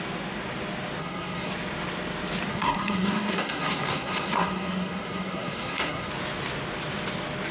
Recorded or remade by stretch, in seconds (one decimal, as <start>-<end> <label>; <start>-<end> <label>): 0.0-1.0 recorded; 1.0-1.5 remade; 1.5-2.5 recorded; 2.5-6.1 remade; 6.1-7.5 recorded